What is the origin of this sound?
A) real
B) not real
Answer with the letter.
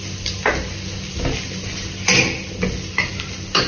A